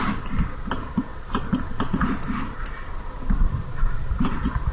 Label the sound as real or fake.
real